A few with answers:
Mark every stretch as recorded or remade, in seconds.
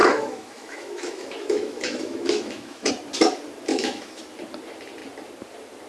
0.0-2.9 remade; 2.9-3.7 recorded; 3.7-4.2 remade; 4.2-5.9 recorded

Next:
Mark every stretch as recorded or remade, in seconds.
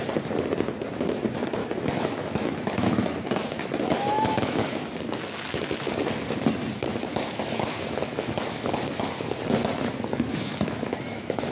0.0-1.6 recorded; 1.6-5.9 remade; 5.9-6.8 recorded; 6.8-11.5 remade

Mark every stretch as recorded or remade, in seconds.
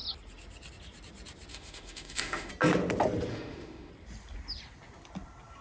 0.0-1.5 recorded; 1.5-2.5 remade; 2.5-3.3 recorded; 3.3-3.9 remade; 3.9-5.6 recorded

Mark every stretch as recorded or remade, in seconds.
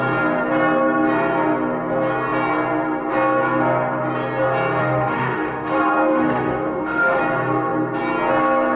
0.0-4.8 recorded; 4.8-7.2 remade; 7.2-8.8 recorded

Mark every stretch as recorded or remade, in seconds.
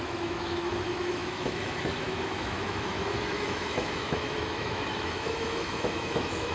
0.0-6.5 remade